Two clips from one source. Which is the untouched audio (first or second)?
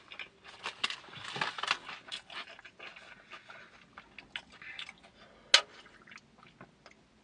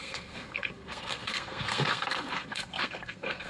first